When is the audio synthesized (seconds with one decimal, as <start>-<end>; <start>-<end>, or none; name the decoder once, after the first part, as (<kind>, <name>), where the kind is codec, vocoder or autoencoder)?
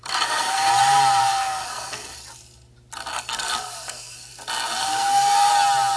0.0-0.7 (codec, SNAC); 1.2-2.1; 3.1-4.3; 4.8-5.5